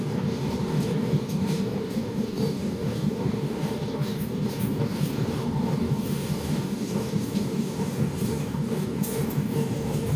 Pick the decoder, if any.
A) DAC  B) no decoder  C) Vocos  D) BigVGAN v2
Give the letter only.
A